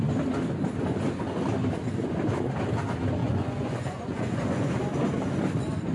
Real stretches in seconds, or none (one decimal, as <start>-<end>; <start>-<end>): 0.0-3.2; 4.7-5.9